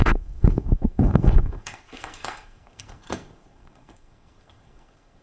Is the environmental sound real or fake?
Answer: fake